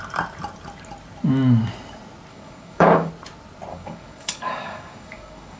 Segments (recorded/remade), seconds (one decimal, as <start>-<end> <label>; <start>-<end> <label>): 0.0-2.3 recorded; 2.3-3.1 remade; 3.1-3.7 recorded; 3.7-5.6 remade